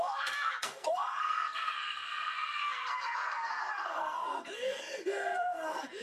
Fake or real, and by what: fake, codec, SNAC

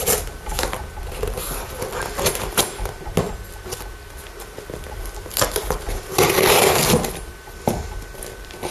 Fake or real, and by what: real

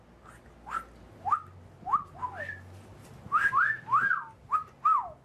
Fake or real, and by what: real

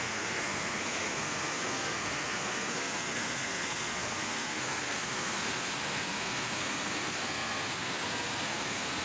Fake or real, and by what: fake, codec, SNAC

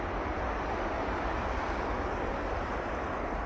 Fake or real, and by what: fake, vocoder, BigVGAN v2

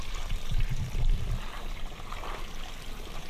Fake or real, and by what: real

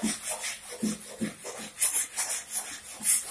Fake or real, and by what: real